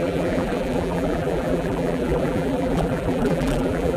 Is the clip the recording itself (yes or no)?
no